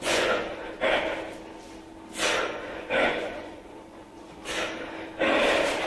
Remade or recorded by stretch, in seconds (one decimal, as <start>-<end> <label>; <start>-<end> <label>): 0.0-0.4 remade; 0.4-2.5 recorded; 2.5-4.4 remade; 4.4-5.9 recorded